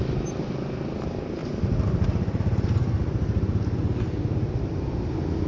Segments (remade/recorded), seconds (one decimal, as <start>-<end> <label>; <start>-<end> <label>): 0.0-5.5 recorded